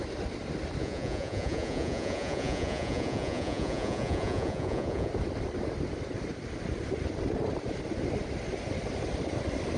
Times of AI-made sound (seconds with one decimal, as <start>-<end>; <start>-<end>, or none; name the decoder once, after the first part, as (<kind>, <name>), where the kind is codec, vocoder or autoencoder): 0.8-5.1 (vocoder, Vocos)